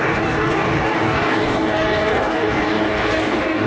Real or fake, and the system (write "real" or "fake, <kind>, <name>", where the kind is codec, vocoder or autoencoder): fake, codec, DAC